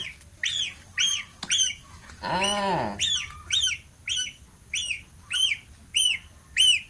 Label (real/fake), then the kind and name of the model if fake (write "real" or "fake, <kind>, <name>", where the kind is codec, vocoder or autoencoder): real